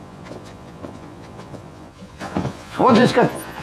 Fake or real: fake